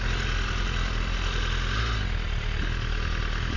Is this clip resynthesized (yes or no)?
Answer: no